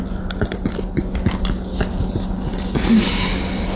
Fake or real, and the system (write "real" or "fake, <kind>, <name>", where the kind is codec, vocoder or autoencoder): real